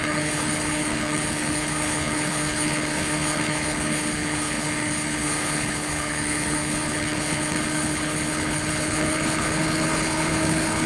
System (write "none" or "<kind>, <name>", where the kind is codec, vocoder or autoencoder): codec, HILCodec